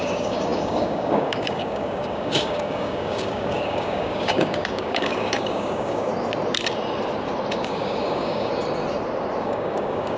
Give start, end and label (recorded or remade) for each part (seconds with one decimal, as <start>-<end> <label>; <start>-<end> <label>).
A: 0.0-6.1 remade; 6.1-7.5 recorded; 7.5-8.5 remade; 8.5-9.4 recorded; 9.4-10.2 remade